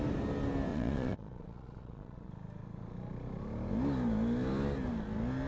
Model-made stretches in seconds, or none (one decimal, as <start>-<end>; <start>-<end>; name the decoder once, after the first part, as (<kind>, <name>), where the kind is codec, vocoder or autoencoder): 0.7-2.3 (vocoder, Vocos)